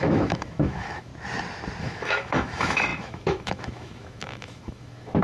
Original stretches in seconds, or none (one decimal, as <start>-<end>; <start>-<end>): 1.1-1.8